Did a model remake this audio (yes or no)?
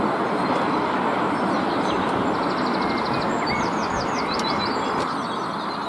no